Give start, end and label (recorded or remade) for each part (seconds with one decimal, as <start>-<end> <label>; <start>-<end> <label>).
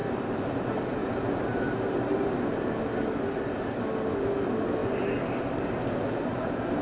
0.0-0.6 remade; 0.6-1.0 recorded; 1.0-2.8 remade; 2.8-6.8 recorded